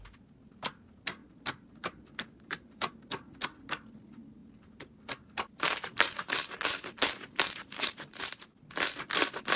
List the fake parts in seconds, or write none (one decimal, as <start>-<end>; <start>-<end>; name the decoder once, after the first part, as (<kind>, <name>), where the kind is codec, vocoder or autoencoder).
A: 1.2-2.9 (vocoder, BigVGAN v2); 4.4-8.7